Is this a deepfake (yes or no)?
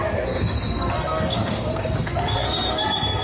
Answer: yes